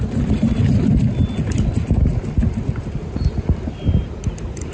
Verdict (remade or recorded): recorded